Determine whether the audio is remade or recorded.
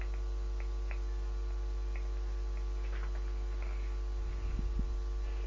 recorded